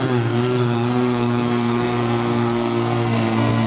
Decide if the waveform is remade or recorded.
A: remade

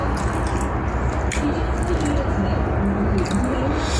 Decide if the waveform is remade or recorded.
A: recorded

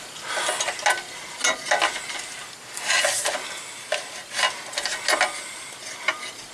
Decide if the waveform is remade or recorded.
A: recorded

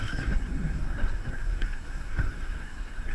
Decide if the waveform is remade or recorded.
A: remade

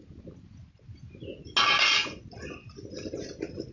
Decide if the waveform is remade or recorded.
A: recorded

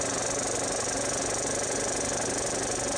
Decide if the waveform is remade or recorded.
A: recorded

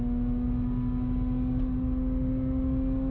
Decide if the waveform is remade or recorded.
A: recorded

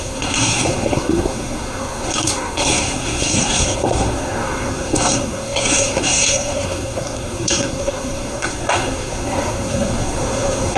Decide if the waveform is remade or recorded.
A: remade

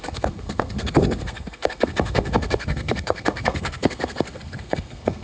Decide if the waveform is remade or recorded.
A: remade